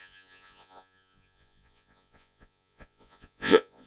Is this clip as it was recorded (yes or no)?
no